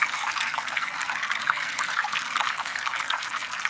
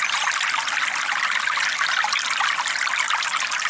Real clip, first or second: second